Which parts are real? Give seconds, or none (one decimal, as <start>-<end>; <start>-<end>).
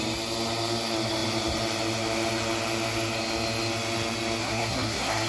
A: 0.0-4.4